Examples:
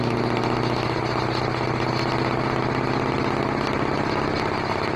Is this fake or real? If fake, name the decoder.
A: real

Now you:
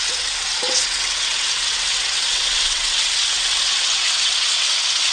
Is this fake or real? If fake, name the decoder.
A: fake, vocoder, WaveNeXt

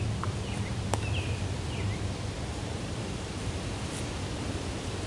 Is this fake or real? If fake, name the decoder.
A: fake, vocoder, BigVGAN v2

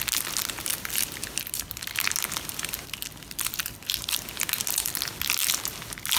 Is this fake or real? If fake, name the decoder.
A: real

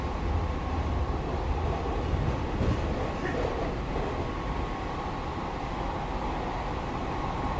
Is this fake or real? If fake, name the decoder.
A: real